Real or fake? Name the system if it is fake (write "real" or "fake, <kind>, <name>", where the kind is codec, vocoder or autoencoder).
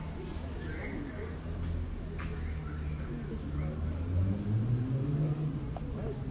real